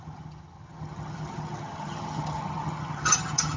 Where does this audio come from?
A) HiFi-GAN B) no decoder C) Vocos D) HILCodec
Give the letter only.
A